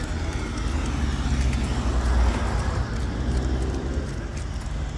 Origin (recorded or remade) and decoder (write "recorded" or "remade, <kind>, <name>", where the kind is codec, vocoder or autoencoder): recorded